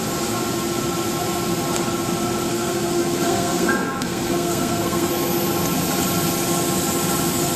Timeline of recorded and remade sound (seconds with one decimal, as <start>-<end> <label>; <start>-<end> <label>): 0.0-2.5 recorded; 2.5-5.1 remade; 5.1-7.6 recorded